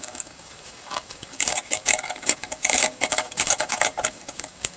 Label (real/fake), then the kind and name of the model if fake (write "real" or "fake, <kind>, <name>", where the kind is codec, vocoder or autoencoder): fake, codec, DAC